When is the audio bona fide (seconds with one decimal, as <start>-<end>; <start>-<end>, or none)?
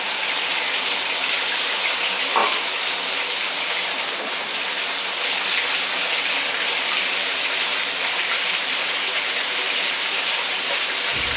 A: 4.5-7.0